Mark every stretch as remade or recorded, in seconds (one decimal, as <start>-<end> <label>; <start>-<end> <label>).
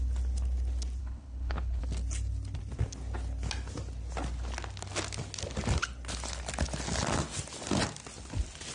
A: 0.0-1.0 recorded; 1.0-1.8 remade; 1.8-8.7 recorded